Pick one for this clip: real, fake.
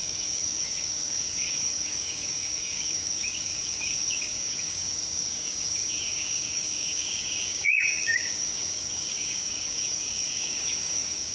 fake